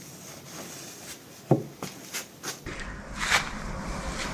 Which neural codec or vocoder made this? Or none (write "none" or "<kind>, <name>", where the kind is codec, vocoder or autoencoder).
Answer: none